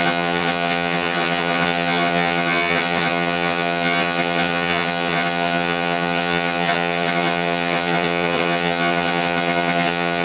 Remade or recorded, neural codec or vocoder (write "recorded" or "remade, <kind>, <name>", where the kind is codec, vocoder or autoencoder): remade, vocoder, HiFi-GAN